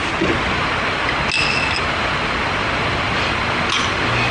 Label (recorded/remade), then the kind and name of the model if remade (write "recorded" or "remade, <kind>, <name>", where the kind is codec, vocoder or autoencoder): recorded